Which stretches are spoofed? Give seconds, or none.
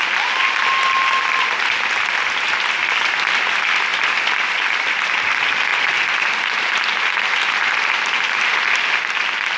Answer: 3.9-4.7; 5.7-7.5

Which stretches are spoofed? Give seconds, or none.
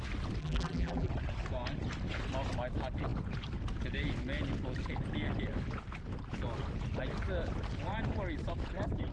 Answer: 0.4-1.1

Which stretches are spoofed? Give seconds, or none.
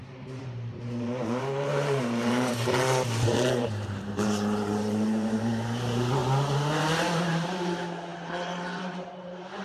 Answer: 0.0-6.2; 7.2-9.6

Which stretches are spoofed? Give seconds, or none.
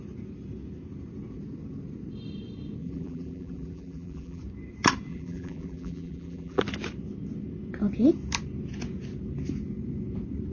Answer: 2.8-4.4; 5.1-6.6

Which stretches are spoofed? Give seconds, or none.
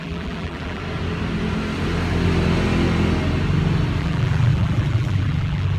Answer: 0.0-0.8; 4.0-5.8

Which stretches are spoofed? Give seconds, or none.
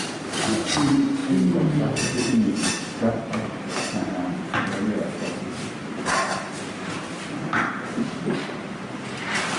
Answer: 0.0-1.2; 2.7-9.6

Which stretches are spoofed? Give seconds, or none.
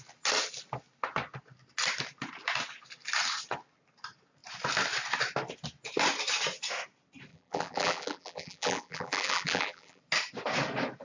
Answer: 7.3-10.0